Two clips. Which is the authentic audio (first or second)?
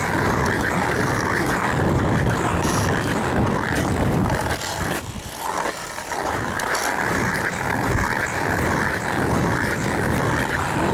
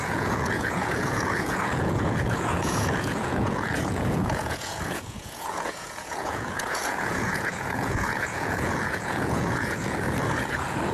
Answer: first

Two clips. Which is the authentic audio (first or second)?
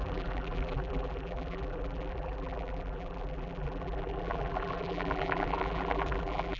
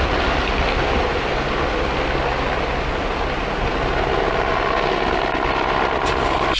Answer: second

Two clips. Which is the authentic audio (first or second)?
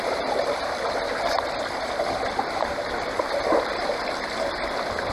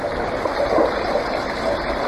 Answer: second